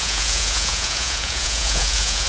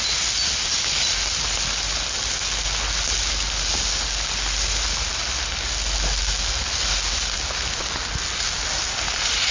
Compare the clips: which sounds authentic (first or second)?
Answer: second